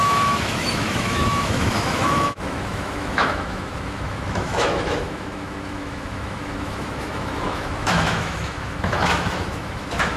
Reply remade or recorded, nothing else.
remade